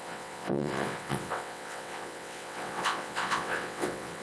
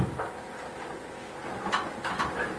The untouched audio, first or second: second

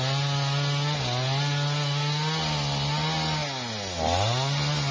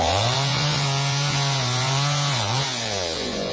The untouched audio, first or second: first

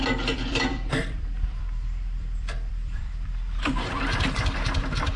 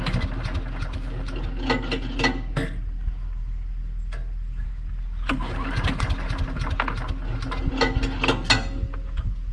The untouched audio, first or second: second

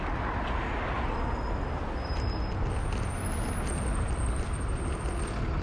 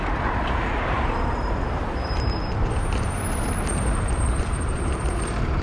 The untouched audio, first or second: first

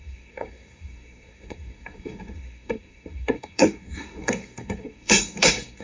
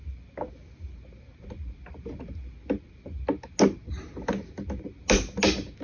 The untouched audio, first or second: second